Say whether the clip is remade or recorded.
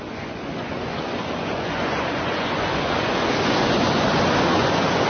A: remade